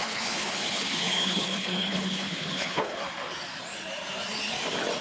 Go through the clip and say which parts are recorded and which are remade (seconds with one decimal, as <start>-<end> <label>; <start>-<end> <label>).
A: 0.0-3.0 remade; 3.0-5.0 recorded